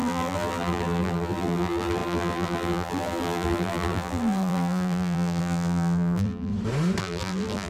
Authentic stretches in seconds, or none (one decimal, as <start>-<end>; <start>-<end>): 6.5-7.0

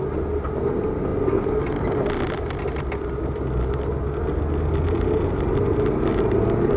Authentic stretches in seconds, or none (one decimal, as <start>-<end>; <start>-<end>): 0.0-6.8

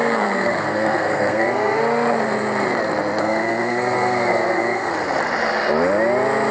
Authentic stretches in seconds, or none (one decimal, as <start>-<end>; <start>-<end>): 1.8-3.2; 4.9-6.5

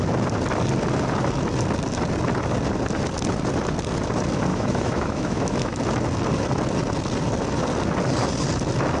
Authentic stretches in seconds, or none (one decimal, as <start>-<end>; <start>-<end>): 0.0-4.5; 5.8-9.0

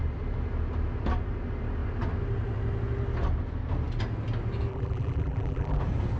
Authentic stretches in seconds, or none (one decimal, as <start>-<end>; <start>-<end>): 0.0-4.7; 5.8-6.2

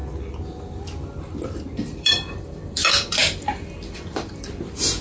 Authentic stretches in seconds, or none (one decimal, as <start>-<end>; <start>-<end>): 0.0-1.8